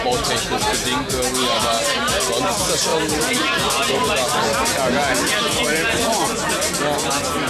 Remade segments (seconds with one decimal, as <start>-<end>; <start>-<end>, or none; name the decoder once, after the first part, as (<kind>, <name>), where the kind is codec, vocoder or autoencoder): none